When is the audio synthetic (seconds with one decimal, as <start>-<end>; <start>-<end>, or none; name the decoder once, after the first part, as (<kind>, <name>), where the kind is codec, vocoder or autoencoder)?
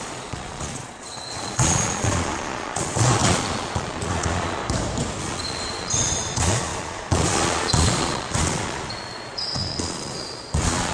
0.0-4.6 (vocoder, Vocos); 5.2-10.9